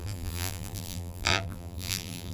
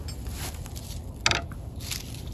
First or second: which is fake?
first